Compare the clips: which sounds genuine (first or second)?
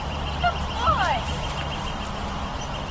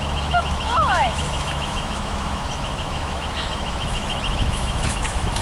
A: first